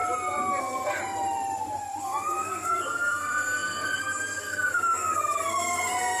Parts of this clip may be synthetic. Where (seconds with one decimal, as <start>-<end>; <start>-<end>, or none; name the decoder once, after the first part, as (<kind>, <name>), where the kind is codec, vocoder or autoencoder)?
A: 0.6-1.0 (codec, SNAC); 2.0-6.2